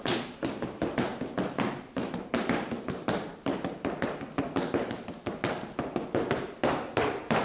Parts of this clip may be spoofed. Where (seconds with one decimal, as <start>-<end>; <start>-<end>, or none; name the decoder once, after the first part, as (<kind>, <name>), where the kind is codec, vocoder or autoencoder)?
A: 0.0-1.1 (vocoder, BigVGAN v2); 1.9-3.3; 7.0-7.4